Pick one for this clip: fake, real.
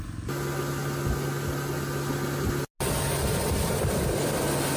real